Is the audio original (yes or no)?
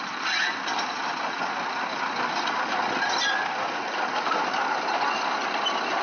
yes